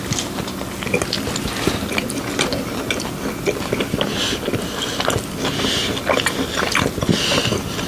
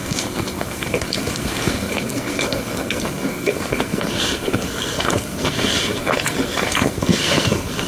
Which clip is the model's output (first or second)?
second